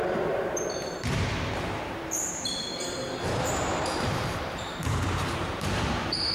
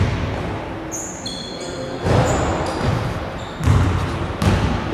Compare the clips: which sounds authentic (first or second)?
second